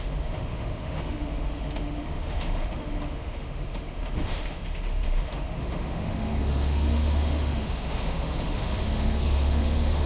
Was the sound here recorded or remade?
remade